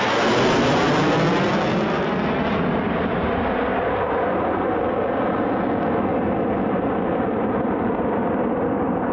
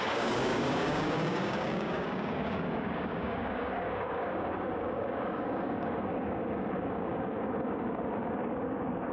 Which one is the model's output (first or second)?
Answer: second